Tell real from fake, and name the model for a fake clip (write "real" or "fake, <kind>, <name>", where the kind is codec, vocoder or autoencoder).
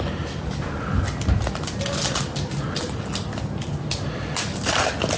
real